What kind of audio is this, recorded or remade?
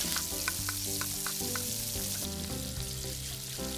recorded